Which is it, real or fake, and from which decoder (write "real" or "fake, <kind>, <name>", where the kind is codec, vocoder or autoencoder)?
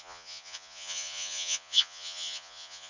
fake, vocoder, Vocos